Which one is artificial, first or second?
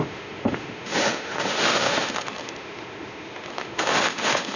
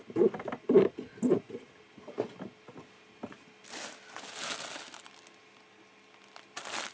first